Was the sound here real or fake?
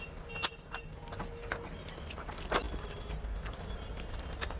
real